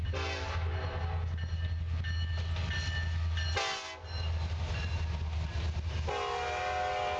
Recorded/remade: recorded